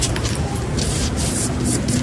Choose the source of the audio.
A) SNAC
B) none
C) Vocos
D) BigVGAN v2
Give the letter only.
B